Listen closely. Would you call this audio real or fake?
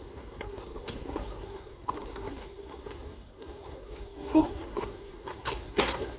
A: fake